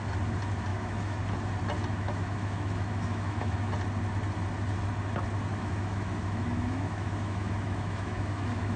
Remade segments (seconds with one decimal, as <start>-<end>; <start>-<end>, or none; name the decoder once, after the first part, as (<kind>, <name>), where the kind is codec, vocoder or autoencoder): 0.7-1.2 (autoencoder, DAC-VAE); 1.9-3.7; 5.5-8.8